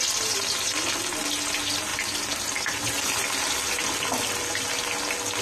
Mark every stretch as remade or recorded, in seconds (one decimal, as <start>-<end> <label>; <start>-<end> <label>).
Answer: 0.0-5.4 recorded